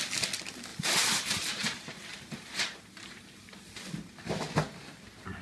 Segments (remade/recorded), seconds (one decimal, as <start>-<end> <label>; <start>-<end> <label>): 0.0-0.7 recorded; 0.7-3.6 remade; 3.6-5.4 recorded

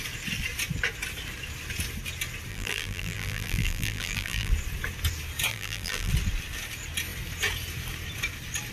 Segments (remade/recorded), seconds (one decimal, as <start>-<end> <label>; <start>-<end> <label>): 0.0-2.5 recorded; 2.5-4.5 remade; 4.5-5.5 recorded; 5.5-6.1 remade; 6.1-8.7 recorded

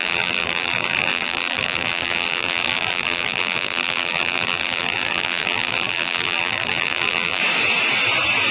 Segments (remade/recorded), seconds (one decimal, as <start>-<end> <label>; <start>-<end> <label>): 0.0-7.4 remade; 7.4-8.5 recorded

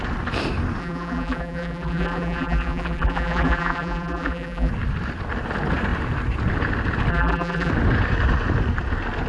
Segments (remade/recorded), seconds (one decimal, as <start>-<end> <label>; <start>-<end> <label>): 0.0-0.8 recorded; 0.8-4.7 remade; 4.7-7.1 recorded; 7.1-7.7 remade; 7.7-9.3 recorded

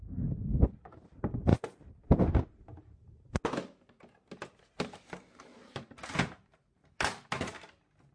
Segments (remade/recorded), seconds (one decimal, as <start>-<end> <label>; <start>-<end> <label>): 0.0-1.5 recorded; 1.5-3.4 remade; 3.4-6.0 recorded; 6.0-7.0 remade; 7.0-8.1 recorded